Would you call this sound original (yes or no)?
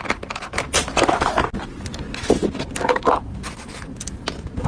yes